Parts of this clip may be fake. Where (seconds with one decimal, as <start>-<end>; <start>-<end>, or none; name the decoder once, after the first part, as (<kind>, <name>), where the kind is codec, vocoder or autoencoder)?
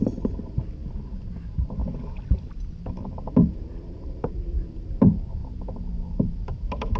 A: 0.0-1.8 (vocoder, BigVGAN v2); 3.6-5.4